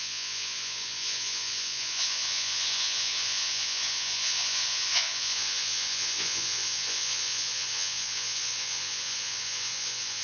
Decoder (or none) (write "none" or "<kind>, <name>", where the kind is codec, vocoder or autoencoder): vocoder, Vocos